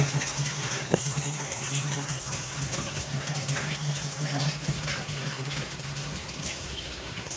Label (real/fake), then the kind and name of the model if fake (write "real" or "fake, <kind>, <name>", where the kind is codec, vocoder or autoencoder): fake, codec, SNAC